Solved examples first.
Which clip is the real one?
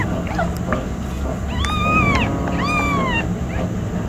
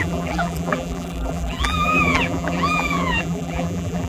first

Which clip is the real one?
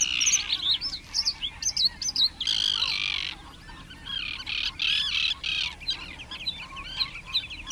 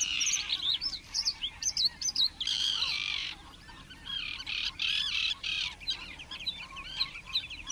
first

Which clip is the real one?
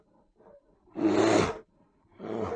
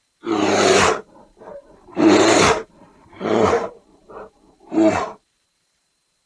first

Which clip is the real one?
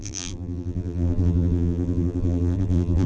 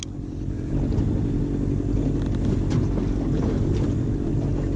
second